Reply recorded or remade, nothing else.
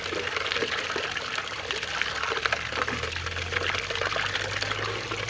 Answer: recorded